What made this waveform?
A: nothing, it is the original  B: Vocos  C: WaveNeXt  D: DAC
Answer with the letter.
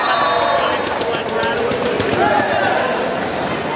A